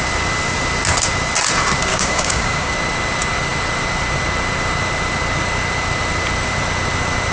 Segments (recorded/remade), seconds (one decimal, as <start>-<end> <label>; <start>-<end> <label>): 0.0-1.9 recorded; 1.9-2.7 remade; 2.7-7.3 recorded